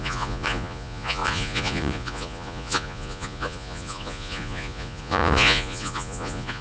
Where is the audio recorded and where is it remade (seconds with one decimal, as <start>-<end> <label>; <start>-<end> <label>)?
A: 0.0-6.6 remade